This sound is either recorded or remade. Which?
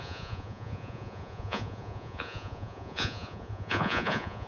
remade